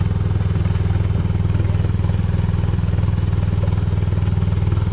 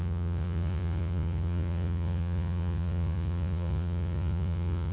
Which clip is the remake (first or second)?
second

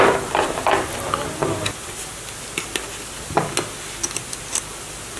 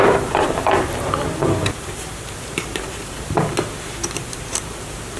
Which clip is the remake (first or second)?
second